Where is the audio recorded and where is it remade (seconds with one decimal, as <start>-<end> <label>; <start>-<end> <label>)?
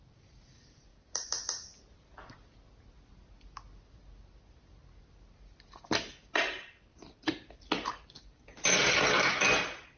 0.0-10.0 recorded